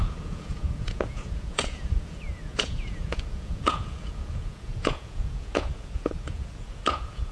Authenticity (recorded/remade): remade